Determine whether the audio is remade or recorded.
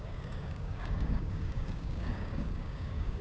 remade